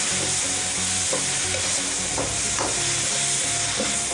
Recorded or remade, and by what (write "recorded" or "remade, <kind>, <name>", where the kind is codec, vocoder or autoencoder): recorded